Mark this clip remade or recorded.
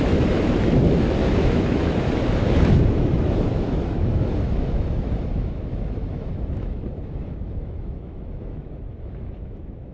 remade